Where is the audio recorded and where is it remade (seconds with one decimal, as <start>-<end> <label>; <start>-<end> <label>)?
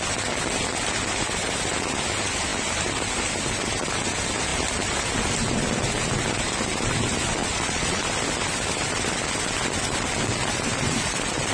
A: 0.0-7.4 recorded; 7.4-8.1 remade; 8.1-11.5 recorded